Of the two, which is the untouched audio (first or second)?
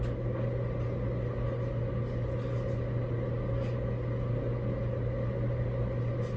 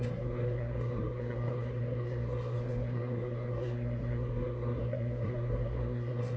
first